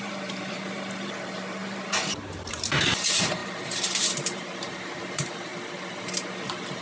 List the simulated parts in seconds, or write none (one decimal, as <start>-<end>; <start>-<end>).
0.0-5.5; 6.0-6.8